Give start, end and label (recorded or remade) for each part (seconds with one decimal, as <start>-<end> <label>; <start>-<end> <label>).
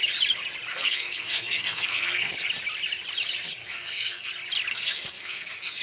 0.0-0.7 recorded; 0.7-2.3 remade; 2.3-3.6 recorded; 3.6-4.3 remade; 4.3-4.7 recorded; 4.7-5.8 remade